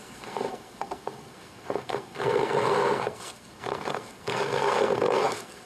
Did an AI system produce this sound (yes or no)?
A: yes